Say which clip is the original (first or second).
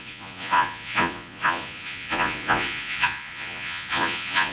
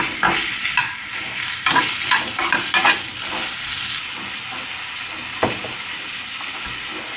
second